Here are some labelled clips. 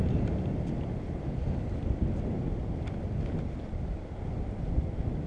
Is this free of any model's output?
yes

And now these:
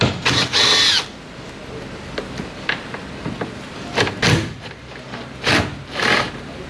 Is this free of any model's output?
yes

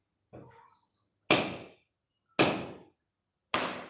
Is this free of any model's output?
yes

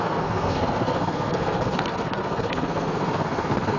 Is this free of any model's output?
no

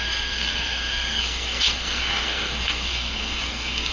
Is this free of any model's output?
no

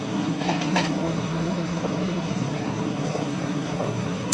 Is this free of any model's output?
no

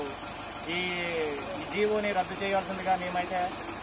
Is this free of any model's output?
yes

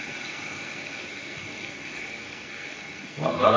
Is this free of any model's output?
no